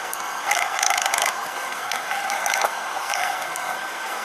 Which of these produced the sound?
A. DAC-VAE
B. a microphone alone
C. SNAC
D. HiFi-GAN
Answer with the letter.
C